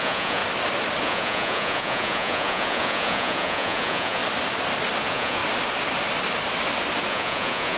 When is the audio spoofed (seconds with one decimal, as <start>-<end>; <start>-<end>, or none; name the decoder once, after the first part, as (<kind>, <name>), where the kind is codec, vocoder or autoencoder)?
0.0-0.4 (vocoder, Vocos); 1.0-4.2; 5.0-5.4; 7.1-7.8